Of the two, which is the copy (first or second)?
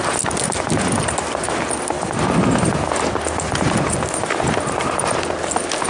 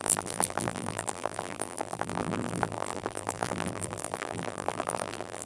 second